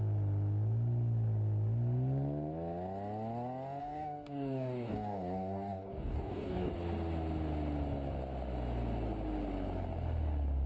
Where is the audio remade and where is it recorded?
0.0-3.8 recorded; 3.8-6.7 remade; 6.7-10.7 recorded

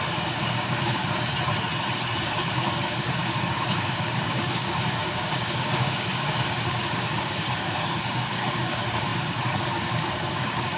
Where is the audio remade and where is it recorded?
0.0-1.0 remade; 1.0-2.2 recorded; 2.2-10.8 remade

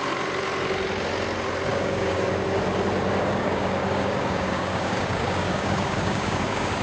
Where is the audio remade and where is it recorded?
0.0-1.7 recorded; 1.7-2.3 remade; 2.3-3.2 recorded; 3.2-6.8 remade

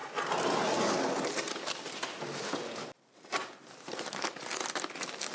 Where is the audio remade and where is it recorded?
0.0-5.3 recorded

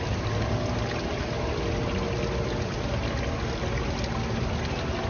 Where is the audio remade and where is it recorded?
0.0-5.1 recorded

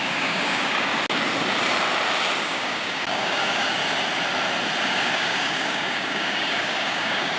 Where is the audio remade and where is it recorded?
0.0-0.9 remade; 0.9-2.4 recorded; 2.4-3.8 remade; 3.8-4.8 recorded; 4.8-7.4 remade